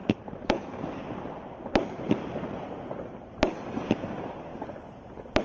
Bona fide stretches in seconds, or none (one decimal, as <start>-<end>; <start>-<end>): none